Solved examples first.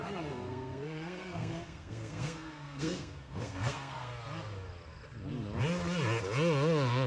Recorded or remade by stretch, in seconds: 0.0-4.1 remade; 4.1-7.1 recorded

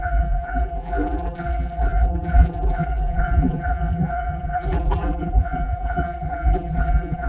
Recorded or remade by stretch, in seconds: 0.0-7.3 remade